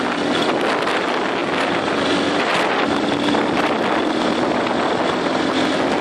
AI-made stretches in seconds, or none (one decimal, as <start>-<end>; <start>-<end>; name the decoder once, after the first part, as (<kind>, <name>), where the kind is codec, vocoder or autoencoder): none